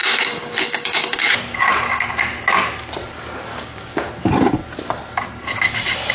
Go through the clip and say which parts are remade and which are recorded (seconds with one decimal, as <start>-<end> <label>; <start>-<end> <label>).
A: 0.0-1.3 remade; 1.3-3.5 recorded; 3.5-4.1 remade; 4.1-6.1 recorded

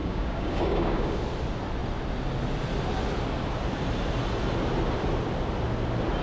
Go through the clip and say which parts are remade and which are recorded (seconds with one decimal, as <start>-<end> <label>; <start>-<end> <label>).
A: 0.0-1.2 remade; 1.2-6.2 recorded

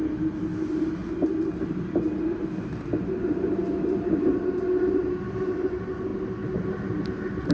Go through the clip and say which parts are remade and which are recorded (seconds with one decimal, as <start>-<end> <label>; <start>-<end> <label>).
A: 0.0-7.5 recorded

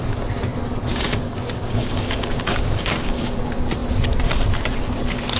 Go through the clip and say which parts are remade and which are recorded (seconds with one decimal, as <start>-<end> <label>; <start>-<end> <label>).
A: 0.0-0.9 recorded; 0.9-3.4 remade; 3.4-5.4 recorded

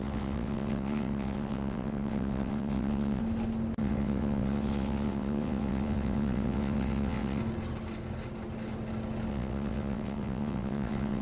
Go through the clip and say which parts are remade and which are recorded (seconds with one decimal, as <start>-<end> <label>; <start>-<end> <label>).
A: 0.0-3.2 remade; 3.2-3.8 recorded; 3.8-7.4 remade; 7.4-9.3 recorded; 9.3-11.2 remade